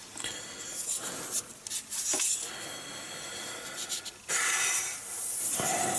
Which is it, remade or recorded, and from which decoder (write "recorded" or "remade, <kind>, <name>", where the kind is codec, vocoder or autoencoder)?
recorded